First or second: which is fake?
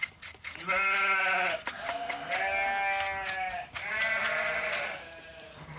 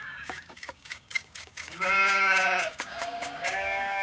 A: second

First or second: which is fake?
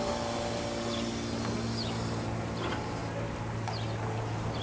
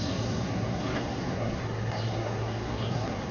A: second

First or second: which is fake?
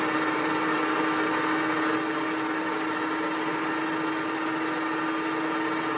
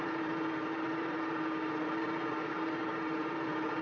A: second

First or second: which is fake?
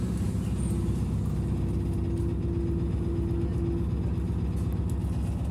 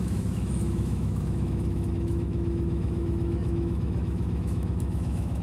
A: second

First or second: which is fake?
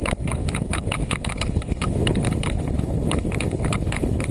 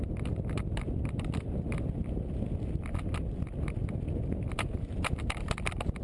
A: first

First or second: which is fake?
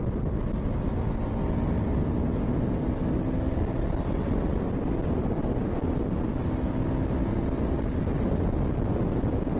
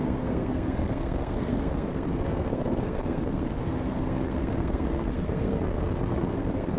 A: second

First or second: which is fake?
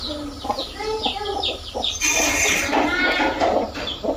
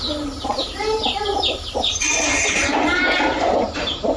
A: second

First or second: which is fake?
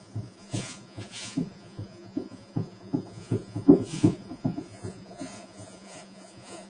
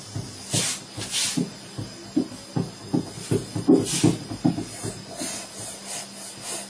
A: first